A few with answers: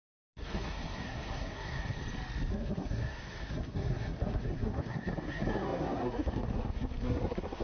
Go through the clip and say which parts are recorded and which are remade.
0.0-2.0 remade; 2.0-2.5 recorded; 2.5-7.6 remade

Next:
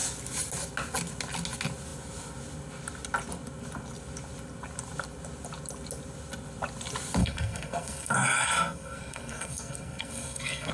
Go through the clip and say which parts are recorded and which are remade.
0.0-7.2 recorded; 7.2-10.7 remade

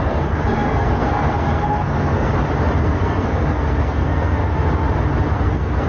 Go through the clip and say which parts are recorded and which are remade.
0.0-2.3 remade; 2.3-2.8 recorded; 2.8-4.4 remade; 4.4-5.3 recorded; 5.3-5.9 remade

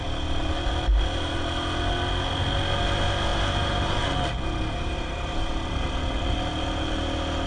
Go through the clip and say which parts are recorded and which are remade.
0.0-7.5 recorded

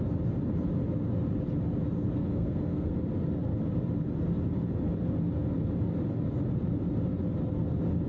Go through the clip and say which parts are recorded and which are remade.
0.0-2.3 recorded; 2.3-3.0 remade; 3.0-8.1 recorded

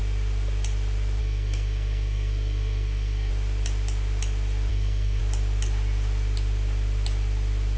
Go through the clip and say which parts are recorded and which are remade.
0.0-1.2 recorded; 1.2-3.3 remade; 3.3-4.7 recorded; 4.7-5.2 remade; 5.2-7.8 recorded